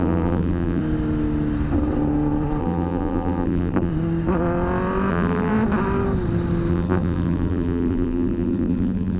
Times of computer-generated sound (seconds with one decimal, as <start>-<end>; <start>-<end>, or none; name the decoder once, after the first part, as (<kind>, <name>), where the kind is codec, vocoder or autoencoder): 0.0-0.8 (vocoder, BigVGAN v2); 2.6-3.9; 5.1-5.5; 6.7-9.2